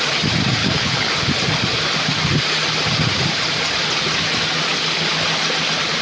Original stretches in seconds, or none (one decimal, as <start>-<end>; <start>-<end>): 0.0-0.6; 1.1-6.0